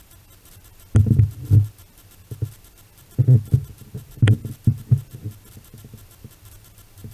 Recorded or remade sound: recorded